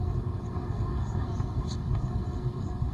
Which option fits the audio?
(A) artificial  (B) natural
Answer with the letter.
A